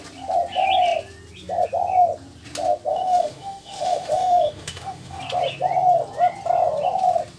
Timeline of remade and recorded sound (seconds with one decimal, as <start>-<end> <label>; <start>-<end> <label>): 0.0-2.9 recorded; 2.9-5.2 remade; 5.2-7.4 recorded